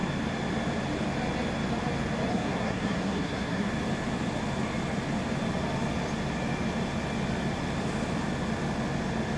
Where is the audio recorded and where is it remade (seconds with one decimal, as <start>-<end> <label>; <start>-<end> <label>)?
0.0-2.3 recorded; 2.3-3.7 remade; 3.7-9.4 recorded